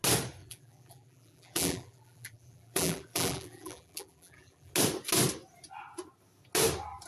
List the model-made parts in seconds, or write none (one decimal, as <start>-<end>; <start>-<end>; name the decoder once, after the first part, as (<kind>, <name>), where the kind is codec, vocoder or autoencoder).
0.4-4.7 (vocoder, BigVGAN v2)